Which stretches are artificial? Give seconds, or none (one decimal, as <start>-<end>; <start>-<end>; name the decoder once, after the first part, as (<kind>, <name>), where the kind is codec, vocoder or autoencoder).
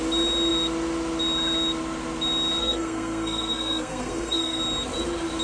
2.6-4.6 (codec, SNAC)